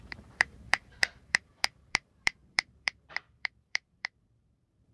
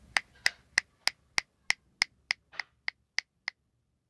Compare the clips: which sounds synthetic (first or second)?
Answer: first